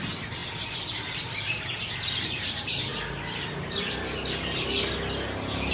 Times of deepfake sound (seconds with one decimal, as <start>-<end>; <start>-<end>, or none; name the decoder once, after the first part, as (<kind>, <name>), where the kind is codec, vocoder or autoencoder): 0.0-2.9 (vocoder, BigVGAN v2)